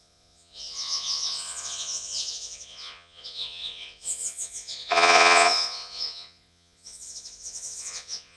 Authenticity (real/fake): fake